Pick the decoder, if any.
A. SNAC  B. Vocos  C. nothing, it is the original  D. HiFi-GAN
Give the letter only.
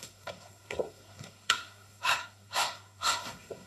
A